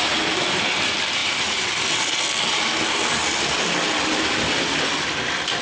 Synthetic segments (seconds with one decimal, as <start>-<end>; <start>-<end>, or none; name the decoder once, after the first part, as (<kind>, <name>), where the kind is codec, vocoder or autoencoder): none